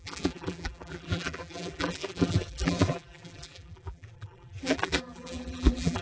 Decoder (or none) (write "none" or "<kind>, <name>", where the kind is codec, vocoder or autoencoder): vocoder, BigVGAN v2